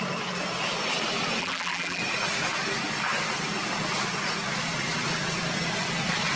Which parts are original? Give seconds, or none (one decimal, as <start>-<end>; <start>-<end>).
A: 0.0-1.4; 2.0-6.4

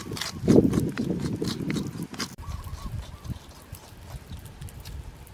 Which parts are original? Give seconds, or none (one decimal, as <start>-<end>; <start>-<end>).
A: 2.7-5.3

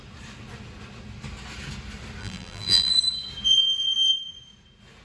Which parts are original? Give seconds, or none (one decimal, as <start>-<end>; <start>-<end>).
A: 0.0-2.2; 2.9-5.0

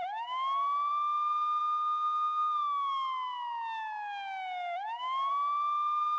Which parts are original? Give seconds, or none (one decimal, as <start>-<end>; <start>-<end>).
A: 0.0-6.2

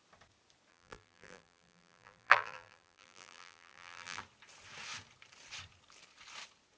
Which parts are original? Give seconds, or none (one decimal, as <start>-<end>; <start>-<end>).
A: 0.0-0.7; 4.2-6.8

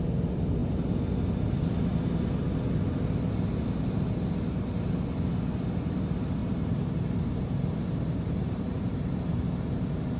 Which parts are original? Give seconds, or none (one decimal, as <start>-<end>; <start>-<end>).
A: 0.0-6.4

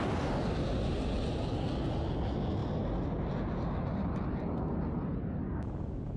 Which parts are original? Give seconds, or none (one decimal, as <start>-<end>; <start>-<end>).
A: 0.0-6.2

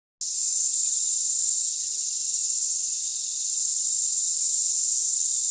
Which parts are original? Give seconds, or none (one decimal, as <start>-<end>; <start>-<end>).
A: 0.0-0.4; 1.7-2.4; 3.0-3.7; 4.4-5.5